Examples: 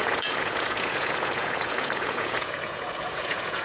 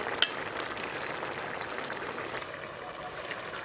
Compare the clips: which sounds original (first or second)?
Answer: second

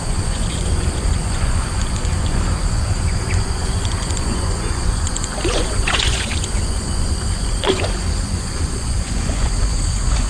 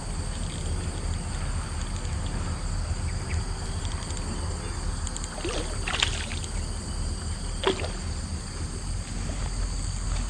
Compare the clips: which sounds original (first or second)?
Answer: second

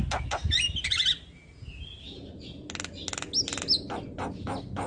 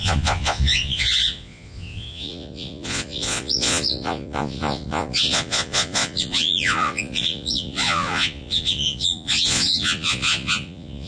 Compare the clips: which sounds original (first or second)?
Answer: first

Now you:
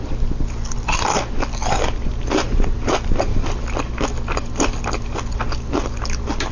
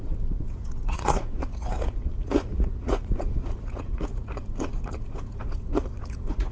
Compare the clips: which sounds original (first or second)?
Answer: first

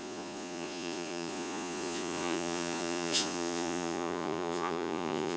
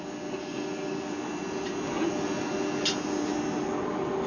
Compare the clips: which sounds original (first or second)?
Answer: second